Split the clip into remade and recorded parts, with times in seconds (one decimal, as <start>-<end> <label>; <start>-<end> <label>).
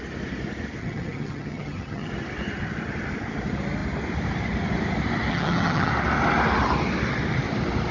0.0-0.8 recorded; 0.8-2.1 remade; 2.1-5.3 recorded; 5.3-5.9 remade; 5.9-7.9 recorded